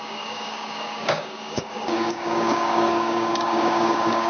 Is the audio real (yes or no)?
no